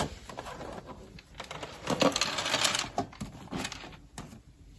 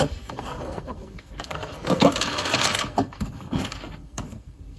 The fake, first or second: second